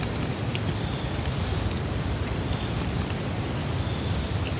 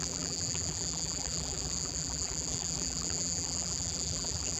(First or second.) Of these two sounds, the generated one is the second